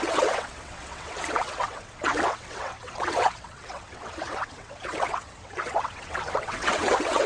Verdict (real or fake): fake